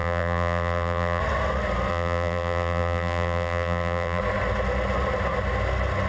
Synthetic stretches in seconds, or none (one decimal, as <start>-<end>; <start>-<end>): 0.0-1.2; 1.9-4.2